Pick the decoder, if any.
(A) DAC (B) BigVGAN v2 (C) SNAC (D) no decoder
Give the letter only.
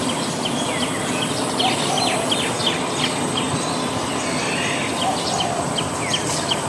D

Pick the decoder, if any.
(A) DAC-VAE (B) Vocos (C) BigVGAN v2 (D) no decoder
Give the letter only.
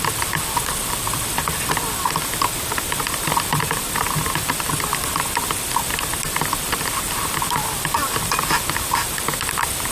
C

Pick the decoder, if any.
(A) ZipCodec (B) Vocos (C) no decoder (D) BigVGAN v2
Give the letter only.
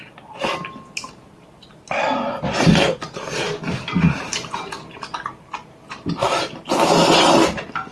C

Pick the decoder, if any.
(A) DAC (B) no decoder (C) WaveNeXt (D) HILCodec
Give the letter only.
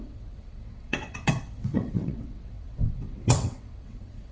C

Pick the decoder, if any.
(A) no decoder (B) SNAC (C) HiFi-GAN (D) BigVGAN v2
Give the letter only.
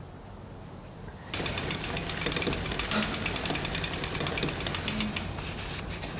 A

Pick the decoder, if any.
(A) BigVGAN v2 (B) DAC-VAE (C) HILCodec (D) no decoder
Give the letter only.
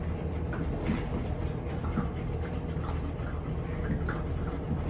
D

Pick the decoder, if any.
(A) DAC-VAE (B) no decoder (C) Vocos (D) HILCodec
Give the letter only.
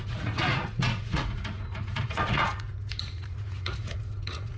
C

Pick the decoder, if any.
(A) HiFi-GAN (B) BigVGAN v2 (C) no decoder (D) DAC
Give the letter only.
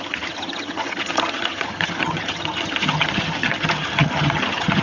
A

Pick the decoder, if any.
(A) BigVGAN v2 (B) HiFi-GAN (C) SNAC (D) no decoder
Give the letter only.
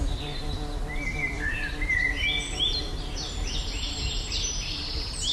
A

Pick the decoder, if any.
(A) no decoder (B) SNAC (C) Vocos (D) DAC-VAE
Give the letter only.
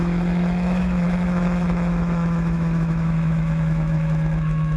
D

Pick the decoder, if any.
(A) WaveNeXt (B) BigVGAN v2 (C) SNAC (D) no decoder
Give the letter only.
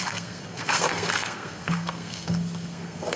C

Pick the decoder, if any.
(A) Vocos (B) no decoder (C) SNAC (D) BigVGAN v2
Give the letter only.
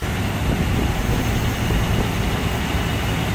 B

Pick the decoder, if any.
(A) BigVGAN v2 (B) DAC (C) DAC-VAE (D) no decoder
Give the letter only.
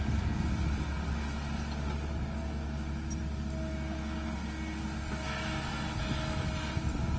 D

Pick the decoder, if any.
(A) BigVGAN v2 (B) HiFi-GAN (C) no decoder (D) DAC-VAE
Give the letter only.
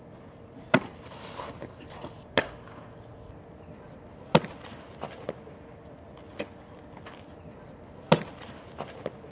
C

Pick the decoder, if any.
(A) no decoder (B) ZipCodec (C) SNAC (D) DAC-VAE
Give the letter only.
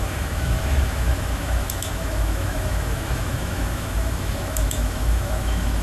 D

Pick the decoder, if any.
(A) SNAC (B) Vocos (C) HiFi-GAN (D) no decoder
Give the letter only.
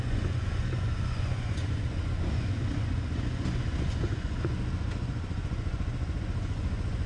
B